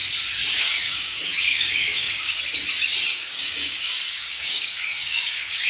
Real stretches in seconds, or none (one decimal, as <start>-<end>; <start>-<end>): 0.0-0.4; 2.4-3.1